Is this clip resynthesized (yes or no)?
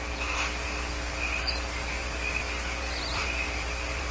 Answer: no